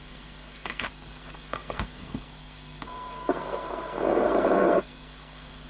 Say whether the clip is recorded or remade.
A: remade